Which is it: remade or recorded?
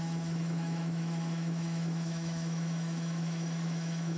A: remade